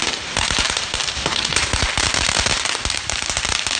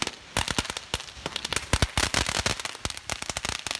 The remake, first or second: first